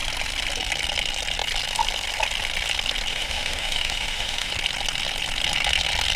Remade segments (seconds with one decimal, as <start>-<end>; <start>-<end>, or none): 3.1-4.5